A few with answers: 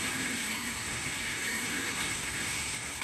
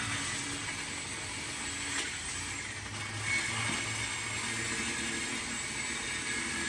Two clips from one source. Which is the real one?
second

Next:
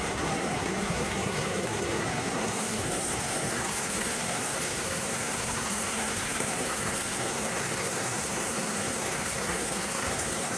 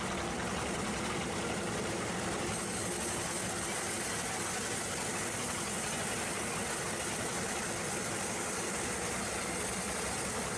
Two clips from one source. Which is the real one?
second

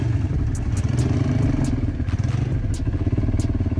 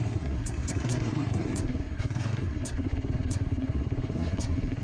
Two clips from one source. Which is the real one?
first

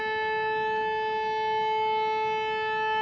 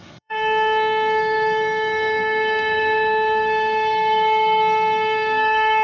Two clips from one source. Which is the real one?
first